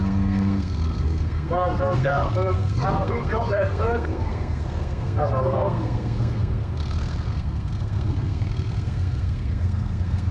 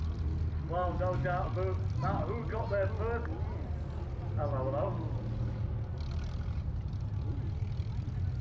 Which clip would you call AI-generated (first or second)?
first